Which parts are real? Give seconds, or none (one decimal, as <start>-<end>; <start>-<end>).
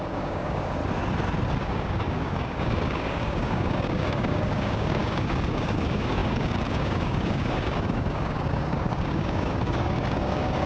0.8-1.6